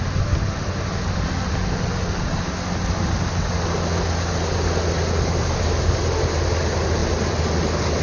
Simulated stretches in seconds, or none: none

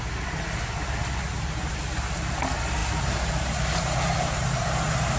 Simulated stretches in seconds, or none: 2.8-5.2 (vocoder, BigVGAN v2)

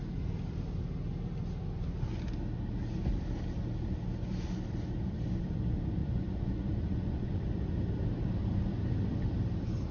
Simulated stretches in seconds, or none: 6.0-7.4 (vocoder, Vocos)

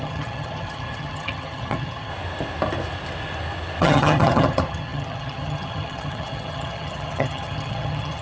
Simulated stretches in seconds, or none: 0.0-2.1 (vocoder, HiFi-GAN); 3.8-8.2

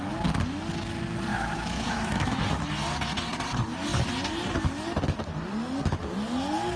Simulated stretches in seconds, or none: 1.3-2.4 (autoencoder, DAC-VAE)

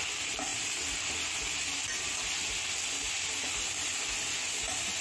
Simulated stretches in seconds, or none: none

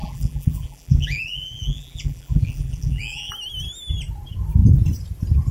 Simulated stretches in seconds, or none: 0.0-3.3 (vocoder, BigVGAN v2)

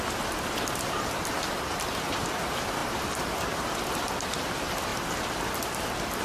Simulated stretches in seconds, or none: none